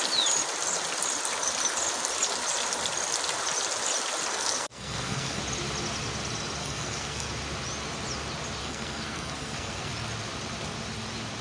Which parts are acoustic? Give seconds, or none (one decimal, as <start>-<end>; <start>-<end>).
0.0-4.3; 5.4-6.6; 7.3-8.6; 9.9-11.4